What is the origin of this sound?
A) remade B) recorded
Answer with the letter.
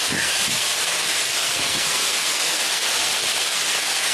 A